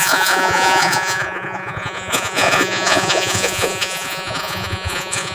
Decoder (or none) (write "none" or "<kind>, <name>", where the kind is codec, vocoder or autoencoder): vocoder, Vocos